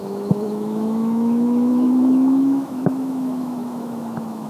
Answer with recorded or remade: remade